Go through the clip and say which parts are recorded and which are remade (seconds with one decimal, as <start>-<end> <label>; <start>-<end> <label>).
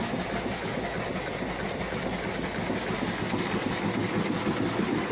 0.0-5.1 recorded